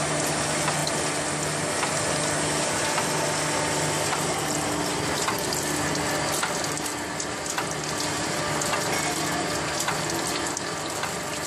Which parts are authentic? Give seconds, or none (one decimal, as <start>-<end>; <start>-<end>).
0.0-11.5